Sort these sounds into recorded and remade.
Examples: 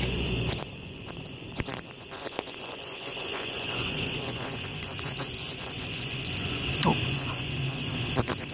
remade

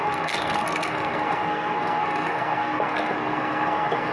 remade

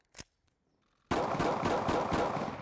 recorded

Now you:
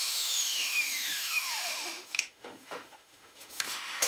remade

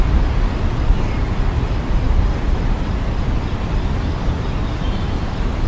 recorded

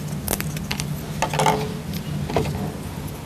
recorded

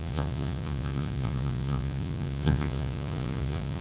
remade